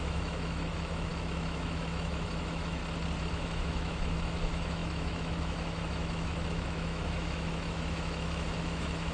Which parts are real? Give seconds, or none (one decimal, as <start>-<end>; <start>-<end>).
2.8-3.3